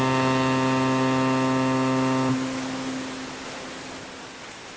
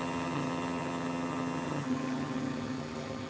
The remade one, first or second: second